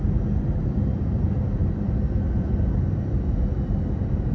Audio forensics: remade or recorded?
recorded